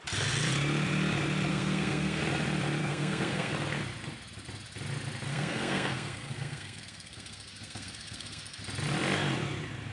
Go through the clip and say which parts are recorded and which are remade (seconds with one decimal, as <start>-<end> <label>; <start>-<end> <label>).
0.0-1.5 recorded; 1.5-2.2 remade; 2.2-2.8 recorded; 2.8-3.5 remade; 3.5-5.3 recorded; 5.3-8.6 remade; 8.6-9.9 recorded